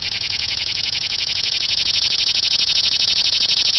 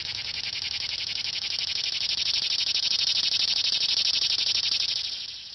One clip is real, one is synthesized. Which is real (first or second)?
second